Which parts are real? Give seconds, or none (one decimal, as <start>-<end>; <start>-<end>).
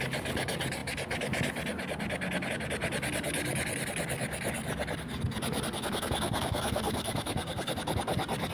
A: 0.0-5.8; 7.7-8.5